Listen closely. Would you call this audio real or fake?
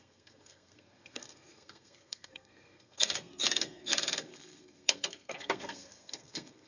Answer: fake